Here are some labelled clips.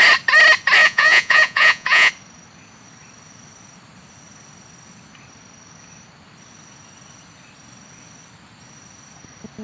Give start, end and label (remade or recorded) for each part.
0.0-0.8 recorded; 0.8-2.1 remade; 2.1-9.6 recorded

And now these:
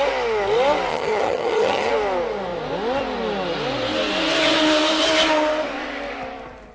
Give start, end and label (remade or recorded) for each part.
0.0-0.9 recorded; 0.9-1.9 remade; 1.9-6.7 recorded

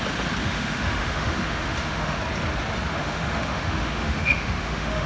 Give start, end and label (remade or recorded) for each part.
0.0-0.4 recorded; 0.4-2.2 remade; 2.2-2.9 recorded; 2.9-5.1 remade

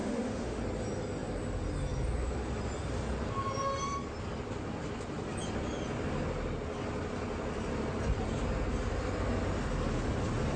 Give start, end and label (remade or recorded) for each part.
0.0-0.6 remade; 0.6-10.6 recorded

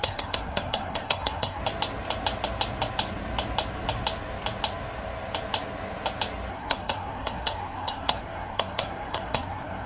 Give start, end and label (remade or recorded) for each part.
0.0-1.6 remade; 1.6-6.5 recorded; 6.5-9.9 remade

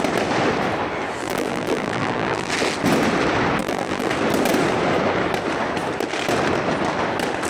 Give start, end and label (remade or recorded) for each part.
0.0-1.2 recorded; 1.2-2.5 remade; 2.5-3.6 recorded; 3.6-4.1 remade; 4.1-7.5 recorded

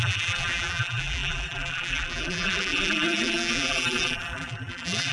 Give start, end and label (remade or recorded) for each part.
0.0-5.1 remade